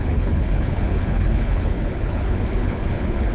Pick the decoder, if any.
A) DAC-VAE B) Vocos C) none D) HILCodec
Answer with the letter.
D